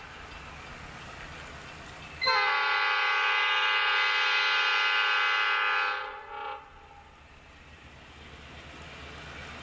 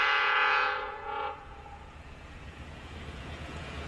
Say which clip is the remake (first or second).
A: second